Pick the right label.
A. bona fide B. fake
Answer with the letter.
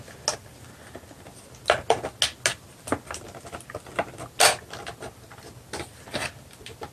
A